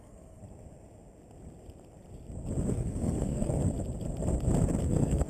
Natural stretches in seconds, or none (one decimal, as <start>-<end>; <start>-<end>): 0.4-2.7; 3.6-4.8